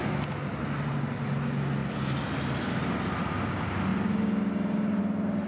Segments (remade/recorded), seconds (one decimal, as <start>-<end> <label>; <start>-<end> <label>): 0.0-5.5 recorded